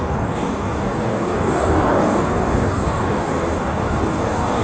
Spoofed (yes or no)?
yes